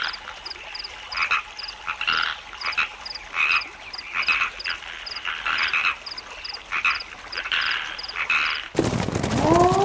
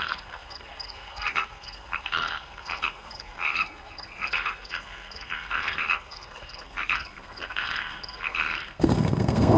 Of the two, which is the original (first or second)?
first